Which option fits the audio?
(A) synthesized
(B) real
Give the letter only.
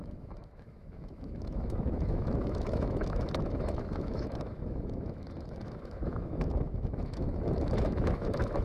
A